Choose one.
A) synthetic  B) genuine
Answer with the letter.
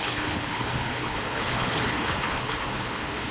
A